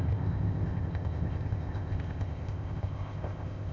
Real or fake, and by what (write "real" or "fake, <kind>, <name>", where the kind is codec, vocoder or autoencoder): fake, codec, ZipCodec